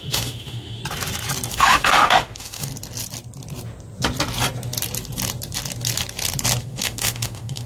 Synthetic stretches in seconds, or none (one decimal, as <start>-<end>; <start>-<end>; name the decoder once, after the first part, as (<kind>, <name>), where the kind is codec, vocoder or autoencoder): 0.0-0.8 (autoencoder, DAC-VAE); 1.5-2.7; 6.6-7.7